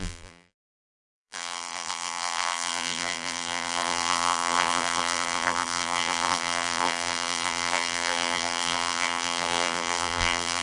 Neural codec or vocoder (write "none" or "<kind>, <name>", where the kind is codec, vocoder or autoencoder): vocoder, BigVGAN v2